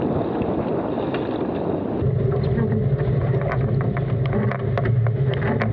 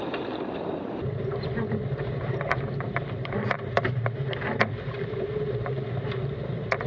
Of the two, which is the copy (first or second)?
second